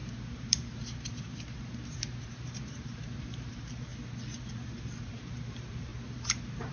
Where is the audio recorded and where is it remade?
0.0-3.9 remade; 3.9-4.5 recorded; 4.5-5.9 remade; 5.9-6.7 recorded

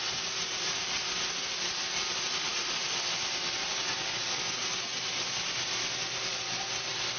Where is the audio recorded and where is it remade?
0.0-7.2 recorded

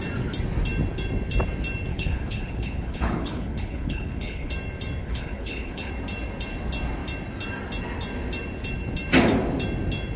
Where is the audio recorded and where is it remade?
0.0-1.9 recorded; 1.9-4.5 remade; 4.5-5.0 recorded; 5.0-5.9 remade; 5.9-10.2 recorded

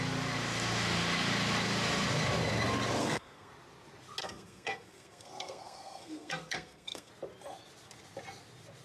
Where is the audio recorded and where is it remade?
0.0-3.0 recorded; 3.0-3.5 remade; 3.5-4.2 recorded; 4.2-7.1 remade; 7.1-8.8 recorded